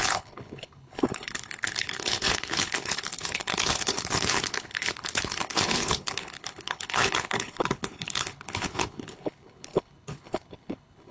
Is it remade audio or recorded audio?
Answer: remade